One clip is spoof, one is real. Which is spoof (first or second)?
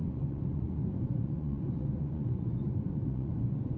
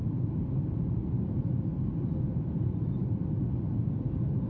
first